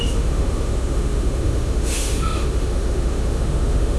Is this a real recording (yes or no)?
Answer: no